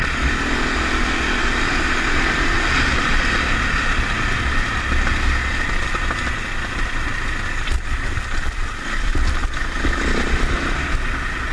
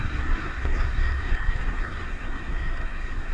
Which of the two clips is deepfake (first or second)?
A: second